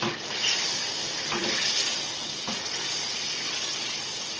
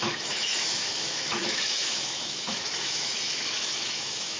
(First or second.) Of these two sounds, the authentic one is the first